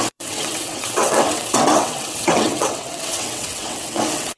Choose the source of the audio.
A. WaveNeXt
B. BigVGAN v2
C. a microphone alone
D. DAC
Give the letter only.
A